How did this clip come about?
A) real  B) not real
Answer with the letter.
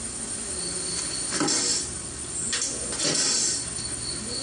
A